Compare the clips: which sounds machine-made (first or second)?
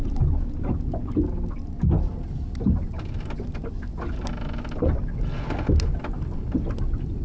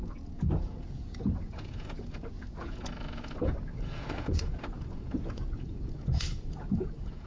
second